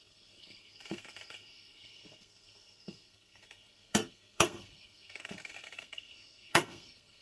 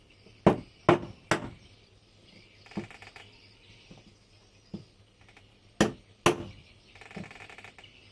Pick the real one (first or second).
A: second